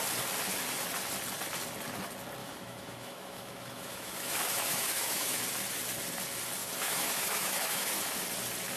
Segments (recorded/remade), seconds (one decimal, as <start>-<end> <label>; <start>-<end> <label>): 0.0-2.4 recorded; 2.4-5.4 remade; 5.4-6.6 recorded; 6.6-8.0 remade; 8.0-8.8 recorded